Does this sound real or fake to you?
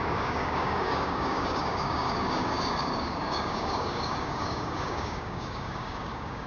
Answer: fake